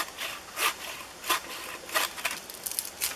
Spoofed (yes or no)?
no